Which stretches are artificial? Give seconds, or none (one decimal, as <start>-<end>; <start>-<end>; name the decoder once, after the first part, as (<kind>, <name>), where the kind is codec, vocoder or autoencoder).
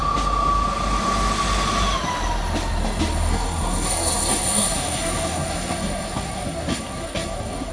3.3-7.7 (codec, SNAC)